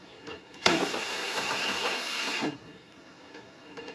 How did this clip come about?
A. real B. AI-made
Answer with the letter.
B